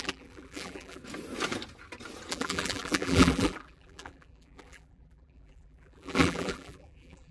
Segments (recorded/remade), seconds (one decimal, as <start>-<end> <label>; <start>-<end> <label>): 0.0-1.0 remade; 1.0-2.3 recorded; 2.3-7.3 remade